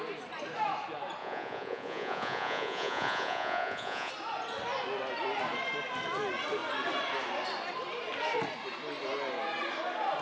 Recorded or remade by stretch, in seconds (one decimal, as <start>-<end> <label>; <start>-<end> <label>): 0.0-1.2 recorded; 1.2-4.1 remade; 4.1-10.2 recorded